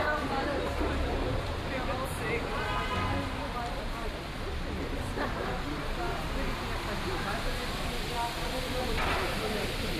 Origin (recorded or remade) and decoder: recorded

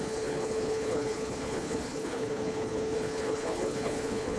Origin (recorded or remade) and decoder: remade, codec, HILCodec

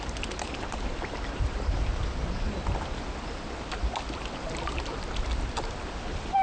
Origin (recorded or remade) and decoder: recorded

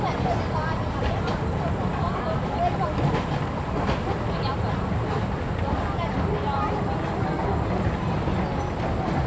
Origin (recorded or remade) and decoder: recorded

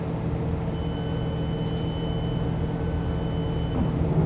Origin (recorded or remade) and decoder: recorded